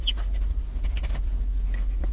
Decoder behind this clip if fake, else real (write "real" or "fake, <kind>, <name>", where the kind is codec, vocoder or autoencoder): real